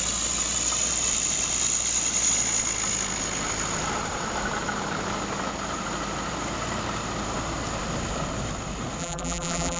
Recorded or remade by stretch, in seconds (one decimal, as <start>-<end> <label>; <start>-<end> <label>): 0.0-9.0 recorded; 9.0-9.8 remade